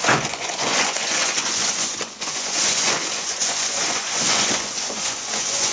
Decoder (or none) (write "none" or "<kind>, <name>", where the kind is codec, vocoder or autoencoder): vocoder, Vocos